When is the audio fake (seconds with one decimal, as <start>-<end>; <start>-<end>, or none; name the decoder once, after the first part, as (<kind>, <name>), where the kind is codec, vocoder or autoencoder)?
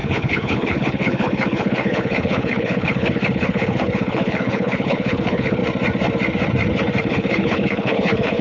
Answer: 0.0-5.6 (codec, HILCodec); 7.0-8.4